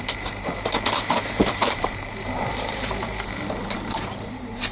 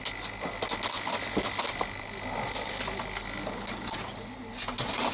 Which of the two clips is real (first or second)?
second